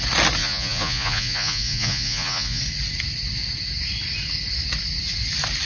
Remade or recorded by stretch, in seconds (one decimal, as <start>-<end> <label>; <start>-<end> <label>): 0.0-0.4 recorded; 0.4-2.6 remade; 2.6-5.7 recorded